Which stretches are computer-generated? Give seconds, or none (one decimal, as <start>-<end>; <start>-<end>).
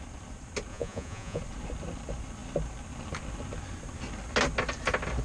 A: 0.7-1.4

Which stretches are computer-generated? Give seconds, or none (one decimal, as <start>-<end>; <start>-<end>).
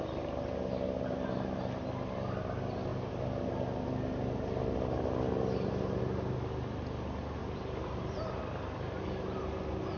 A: 7.4-8.4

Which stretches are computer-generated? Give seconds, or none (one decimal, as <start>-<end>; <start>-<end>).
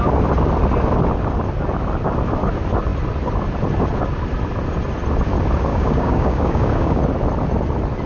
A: 5.7-7.0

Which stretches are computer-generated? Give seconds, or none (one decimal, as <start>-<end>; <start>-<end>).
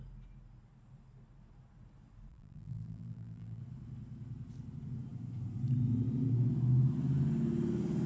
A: 2.3-3.6